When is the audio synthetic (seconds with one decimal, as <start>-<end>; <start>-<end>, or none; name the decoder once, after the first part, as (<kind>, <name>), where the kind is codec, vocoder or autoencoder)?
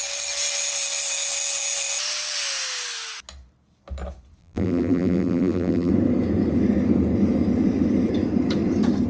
4.4-5.9 (vocoder, BigVGAN v2)